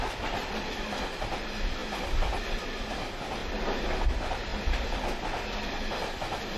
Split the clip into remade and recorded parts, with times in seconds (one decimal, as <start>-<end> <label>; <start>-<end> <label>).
0.0-1.8 remade; 1.8-2.4 recorded; 2.4-3.4 remade; 3.4-4.0 recorded; 4.0-4.5 remade; 4.5-5.6 recorded; 5.6-6.6 remade